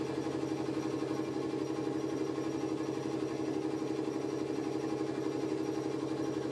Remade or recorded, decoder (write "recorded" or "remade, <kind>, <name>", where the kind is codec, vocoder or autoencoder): recorded